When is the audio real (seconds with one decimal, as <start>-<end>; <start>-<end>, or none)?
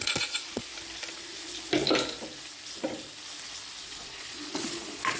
0.7-3.8